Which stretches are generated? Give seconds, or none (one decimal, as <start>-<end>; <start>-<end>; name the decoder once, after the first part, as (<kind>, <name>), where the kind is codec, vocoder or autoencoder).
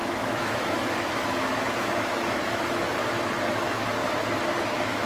0.0-4.0 (autoencoder, DAC-VAE); 4.6-5.1